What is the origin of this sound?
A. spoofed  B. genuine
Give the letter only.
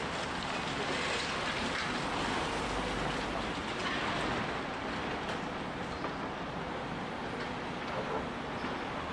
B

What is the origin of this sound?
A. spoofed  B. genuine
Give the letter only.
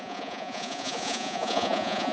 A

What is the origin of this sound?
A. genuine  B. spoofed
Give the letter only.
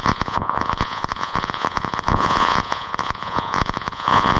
B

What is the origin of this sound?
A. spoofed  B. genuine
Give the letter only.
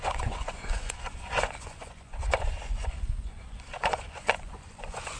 A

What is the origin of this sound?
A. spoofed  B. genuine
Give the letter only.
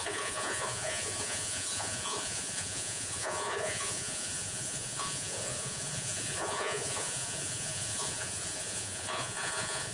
A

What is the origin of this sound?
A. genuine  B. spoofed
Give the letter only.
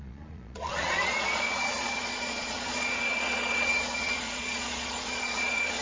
B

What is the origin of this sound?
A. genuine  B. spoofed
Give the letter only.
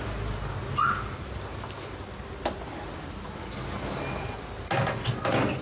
A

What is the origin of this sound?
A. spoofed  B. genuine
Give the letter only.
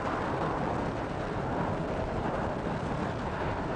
B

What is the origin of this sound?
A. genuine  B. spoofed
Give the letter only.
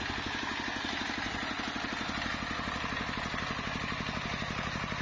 A